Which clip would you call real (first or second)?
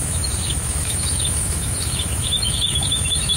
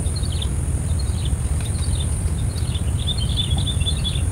second